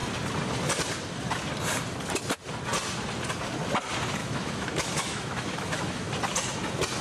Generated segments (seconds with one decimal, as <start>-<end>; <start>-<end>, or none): 4.2-6.1